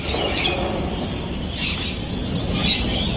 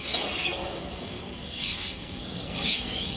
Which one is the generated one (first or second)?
second